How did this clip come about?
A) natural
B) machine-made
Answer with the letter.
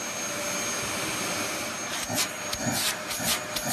A